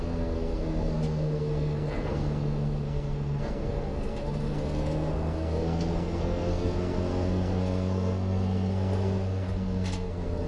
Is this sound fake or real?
fake